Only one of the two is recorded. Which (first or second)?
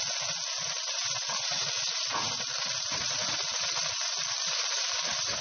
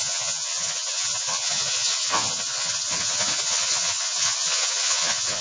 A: first